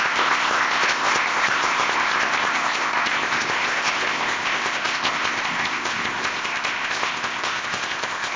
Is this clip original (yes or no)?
no